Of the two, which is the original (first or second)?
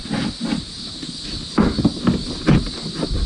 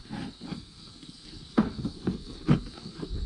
first